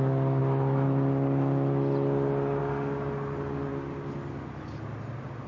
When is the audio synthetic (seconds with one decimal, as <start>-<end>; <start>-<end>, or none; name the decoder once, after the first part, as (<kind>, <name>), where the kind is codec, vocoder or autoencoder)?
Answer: none